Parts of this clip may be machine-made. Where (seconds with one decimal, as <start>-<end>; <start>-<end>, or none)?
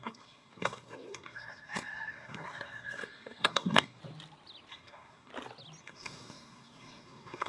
0.0-4.0; 4.7-5.3; 5.8-7.5